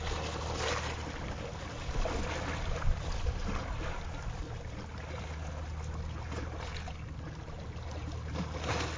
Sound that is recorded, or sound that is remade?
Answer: recorded